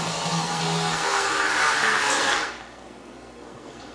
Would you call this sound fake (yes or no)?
yes